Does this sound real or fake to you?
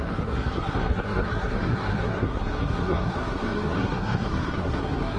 fake